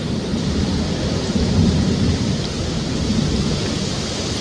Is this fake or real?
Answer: real